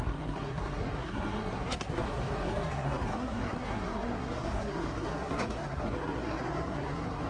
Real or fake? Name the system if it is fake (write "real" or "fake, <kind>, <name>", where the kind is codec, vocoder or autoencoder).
fake, codec, SNAC